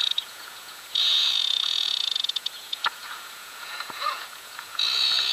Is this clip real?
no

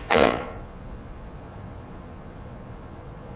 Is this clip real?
no